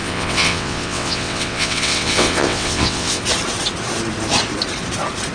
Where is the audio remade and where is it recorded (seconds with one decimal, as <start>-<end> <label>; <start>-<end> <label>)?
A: 0.0-3.2 remade; 3.2-5.3 recorded